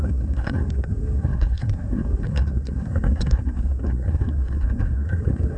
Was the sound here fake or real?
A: fake